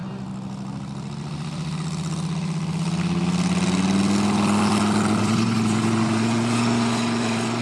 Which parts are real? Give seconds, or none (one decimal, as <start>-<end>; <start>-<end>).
0.0-5.2